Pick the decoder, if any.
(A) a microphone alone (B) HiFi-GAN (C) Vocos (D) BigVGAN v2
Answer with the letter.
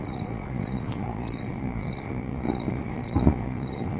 C